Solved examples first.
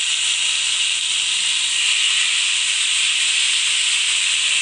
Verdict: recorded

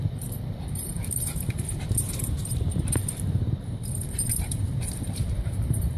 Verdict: remade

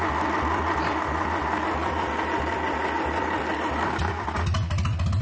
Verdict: recorded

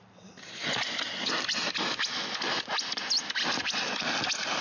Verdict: recorded